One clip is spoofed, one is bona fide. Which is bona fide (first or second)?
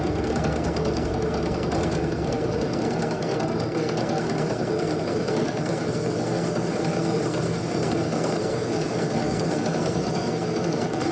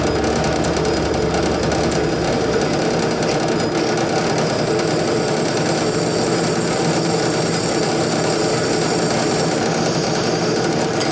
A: second